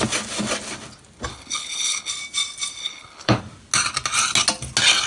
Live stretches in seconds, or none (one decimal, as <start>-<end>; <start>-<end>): 0.0-1.3; 2.1-2.8; 3.4-5.1